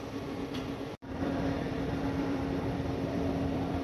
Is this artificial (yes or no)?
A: yes